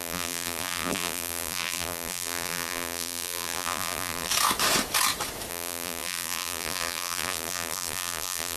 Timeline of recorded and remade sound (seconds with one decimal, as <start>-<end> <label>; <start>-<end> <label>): 0.0-4.3 remade; 4.3-5.5 recorded; 5.5-8.6 remade

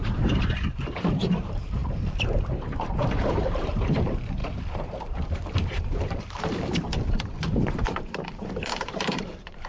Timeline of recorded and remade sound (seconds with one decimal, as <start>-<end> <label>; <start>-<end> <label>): 0.0-9.7 remade